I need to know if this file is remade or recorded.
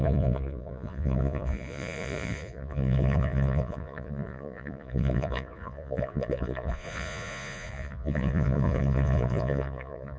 remade